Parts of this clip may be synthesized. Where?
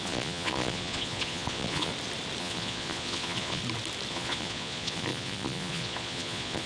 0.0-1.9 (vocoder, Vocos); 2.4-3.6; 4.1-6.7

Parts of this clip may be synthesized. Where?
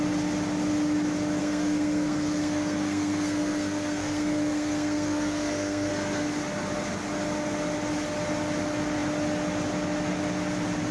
1.4-5.9 (codec, SNAC)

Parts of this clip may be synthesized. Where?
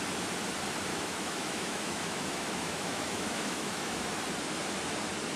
0.9-4.1 (autoencoder, DAC-VAE)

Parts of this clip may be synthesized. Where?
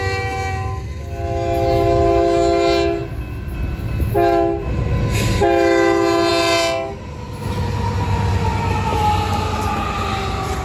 none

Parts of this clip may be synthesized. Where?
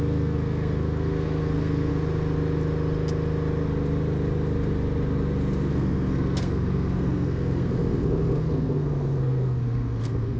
0.0-1.9 (codec, SNAC); 5.7-10.4